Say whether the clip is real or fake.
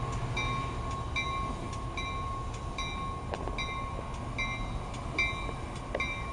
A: real